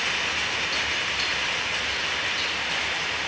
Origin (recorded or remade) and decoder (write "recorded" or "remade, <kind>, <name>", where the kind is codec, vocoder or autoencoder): recorded